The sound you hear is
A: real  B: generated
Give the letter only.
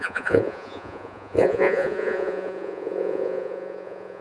B